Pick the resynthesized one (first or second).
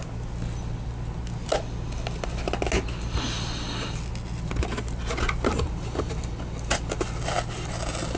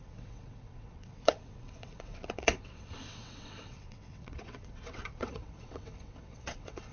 second